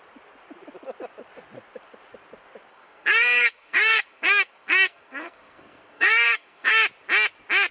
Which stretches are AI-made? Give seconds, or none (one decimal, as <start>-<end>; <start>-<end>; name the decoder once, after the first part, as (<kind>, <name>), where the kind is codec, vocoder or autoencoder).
2.7-6.7 (codec, SNAC)